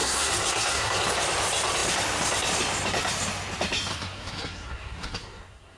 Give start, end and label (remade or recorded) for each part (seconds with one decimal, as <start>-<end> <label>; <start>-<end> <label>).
0.0-1.0 remade; 1.0-3.9 recorded; 3.9-5.8 remade